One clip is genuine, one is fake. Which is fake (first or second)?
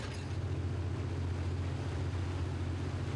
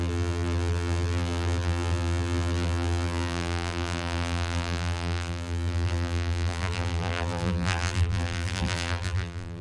second